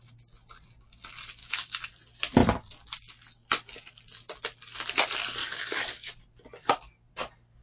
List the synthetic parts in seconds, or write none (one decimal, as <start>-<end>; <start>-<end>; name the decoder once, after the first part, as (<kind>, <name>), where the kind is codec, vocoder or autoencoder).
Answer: 1.4-1.9 (codec, DAC); 5.4-6.1; 6.6-7.1

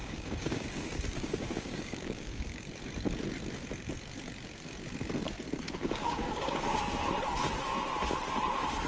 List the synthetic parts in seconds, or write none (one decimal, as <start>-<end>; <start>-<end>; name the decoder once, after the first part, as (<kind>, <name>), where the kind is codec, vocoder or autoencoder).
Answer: 0.0-2.7 (codec, DAC); 6.0-6.8